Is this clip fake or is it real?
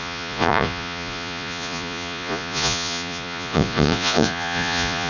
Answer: fake